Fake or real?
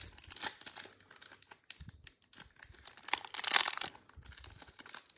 real